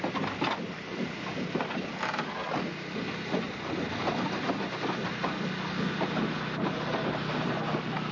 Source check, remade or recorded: recorded